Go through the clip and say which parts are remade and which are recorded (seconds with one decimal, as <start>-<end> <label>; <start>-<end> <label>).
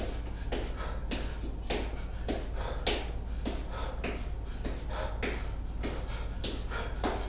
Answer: 0.0-7.3 recorded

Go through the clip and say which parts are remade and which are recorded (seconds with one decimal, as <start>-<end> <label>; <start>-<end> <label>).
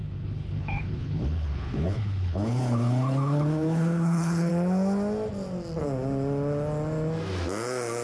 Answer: 0.0-4.5 remade; 4.5-8.0 recorded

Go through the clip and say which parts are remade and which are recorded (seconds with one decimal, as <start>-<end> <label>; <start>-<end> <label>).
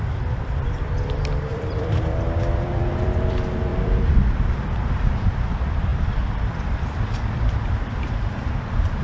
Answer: 0.0-9.0 remade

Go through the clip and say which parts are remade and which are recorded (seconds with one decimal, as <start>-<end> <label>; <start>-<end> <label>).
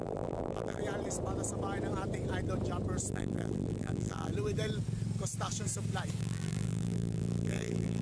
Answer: 0.0-0.8 remade; 0.8-3.1 recorded; 3.1-4.3 remade; 4.3-6.2 recorded; 6.2-8.0 remade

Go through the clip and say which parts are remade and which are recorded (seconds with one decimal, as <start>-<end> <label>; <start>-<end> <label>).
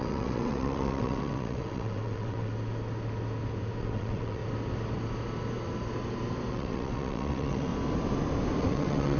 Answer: 0.0-2.5 remade; 2.5-3.8 recorded; 3.8-4.4 remade; 4.4-6.5 recorded; 6.5-7.7 remade; 7.7-8.6 recorded; 8.6-9.2 remade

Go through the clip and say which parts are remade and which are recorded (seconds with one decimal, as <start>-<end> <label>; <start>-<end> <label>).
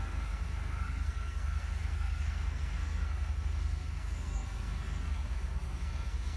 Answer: 0.0-6.4 remade